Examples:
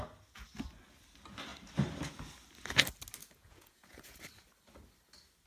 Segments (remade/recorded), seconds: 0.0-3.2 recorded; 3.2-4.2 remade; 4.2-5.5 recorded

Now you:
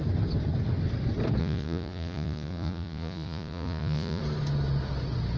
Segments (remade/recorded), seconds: 0.0-1.4 recorded; 1.4-4.2 remade; 4.2-5.4 recorded

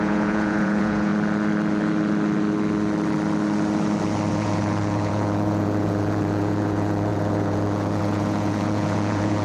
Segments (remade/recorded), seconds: 0.0-1.1 remade; 1.1-4.3 recorded; 4.3-9.4 remade

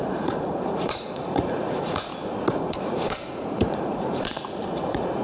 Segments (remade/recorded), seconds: 0.0-2.1 remade; 2.1-2.6 recorded; 2.6-5.2 remade

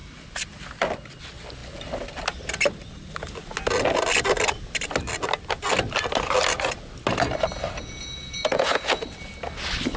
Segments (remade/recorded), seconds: 0.0-7.8 recorded; 7.8-9.0 remade; 9.0-10.0 recorded

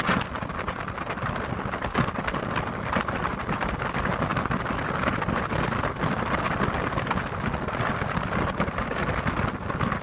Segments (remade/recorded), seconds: 0.0-10.0 recorded